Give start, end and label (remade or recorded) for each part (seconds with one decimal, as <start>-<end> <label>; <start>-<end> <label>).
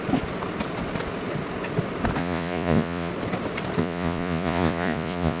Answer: 0.0-2.2 recorded; 2.2-3.1 remade; 3.1-3.8 recorded; 3.8-5.4 remade